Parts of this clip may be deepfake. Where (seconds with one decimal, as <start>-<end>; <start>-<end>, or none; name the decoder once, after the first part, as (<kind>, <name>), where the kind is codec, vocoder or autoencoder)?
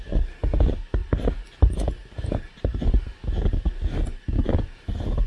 none